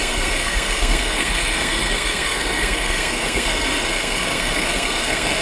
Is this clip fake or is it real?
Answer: fake